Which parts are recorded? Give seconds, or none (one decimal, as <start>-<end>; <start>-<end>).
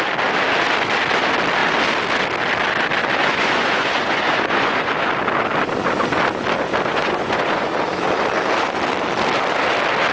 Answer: 0.0-3.2; 4.9-6.9; 7.7-10.1